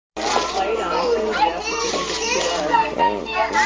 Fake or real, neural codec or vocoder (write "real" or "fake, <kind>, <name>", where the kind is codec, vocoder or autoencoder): real